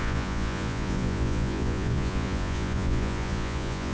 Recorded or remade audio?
remade